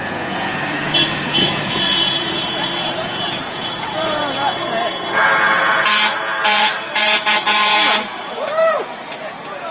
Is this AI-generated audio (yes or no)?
yes